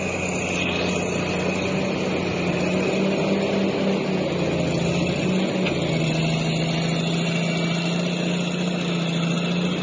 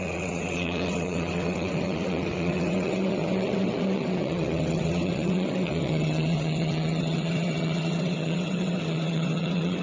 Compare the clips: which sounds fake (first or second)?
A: second